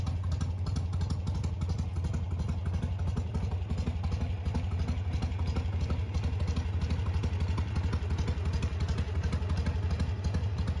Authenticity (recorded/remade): recorded